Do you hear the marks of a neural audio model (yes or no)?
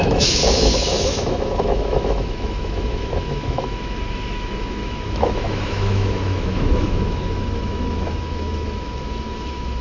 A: yes